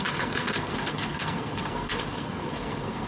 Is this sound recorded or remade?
remade